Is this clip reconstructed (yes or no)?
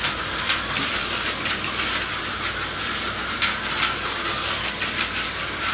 no